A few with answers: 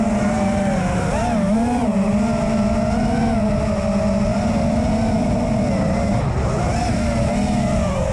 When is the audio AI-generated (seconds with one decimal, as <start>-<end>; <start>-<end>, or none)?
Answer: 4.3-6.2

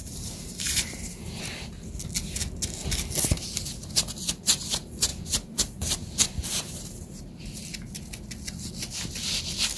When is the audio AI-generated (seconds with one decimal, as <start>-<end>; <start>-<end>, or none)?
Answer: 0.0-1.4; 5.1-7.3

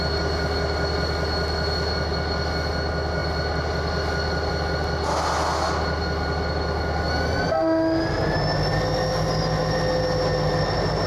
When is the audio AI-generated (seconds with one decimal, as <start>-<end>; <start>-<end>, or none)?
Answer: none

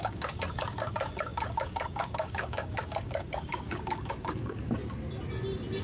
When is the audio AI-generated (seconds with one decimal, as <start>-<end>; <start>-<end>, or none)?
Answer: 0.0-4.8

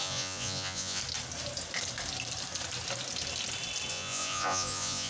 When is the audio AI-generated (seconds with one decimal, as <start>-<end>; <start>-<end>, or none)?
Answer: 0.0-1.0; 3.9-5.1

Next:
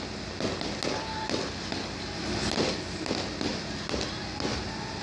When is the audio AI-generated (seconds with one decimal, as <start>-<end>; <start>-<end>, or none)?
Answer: none

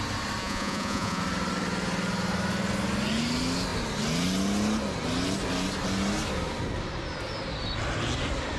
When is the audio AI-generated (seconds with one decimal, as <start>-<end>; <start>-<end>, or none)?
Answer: 0.4-1.2